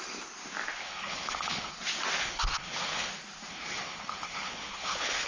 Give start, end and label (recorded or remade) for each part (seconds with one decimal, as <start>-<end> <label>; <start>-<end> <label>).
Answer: 0.0-0.8 recorded; 0.8-1.7 remade; 1.7-2.2 recorded; 2.2-3.1 remade; 3.1-3.5 recorded; 3.5-5.3 remade